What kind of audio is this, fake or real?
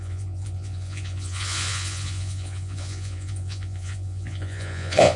fake